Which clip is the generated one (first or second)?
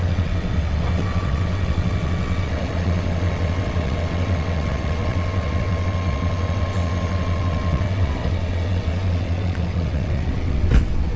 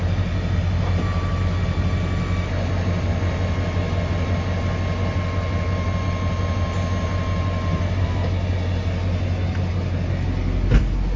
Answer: first